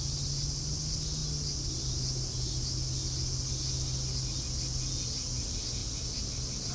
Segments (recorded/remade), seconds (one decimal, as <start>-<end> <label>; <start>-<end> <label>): 0.0-6.7 recorded